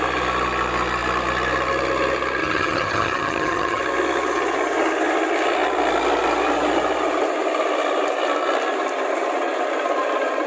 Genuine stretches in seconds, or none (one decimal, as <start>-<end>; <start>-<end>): 0.0-2.4; 3.8-10.5